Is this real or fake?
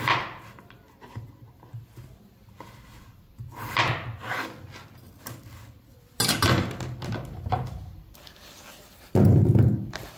real